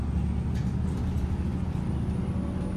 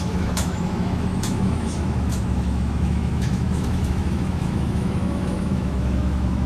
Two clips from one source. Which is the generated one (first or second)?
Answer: second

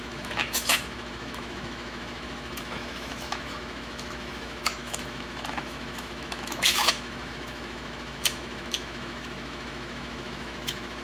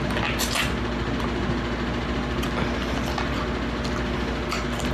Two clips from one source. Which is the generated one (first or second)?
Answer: first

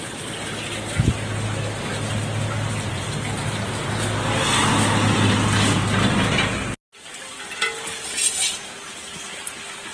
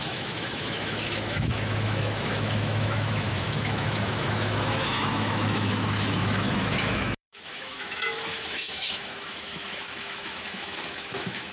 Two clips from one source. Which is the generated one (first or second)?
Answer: second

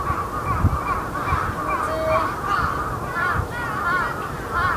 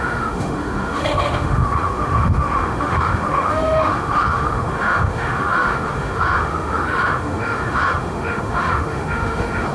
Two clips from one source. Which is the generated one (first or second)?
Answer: second